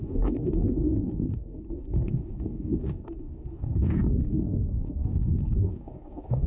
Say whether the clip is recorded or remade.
remade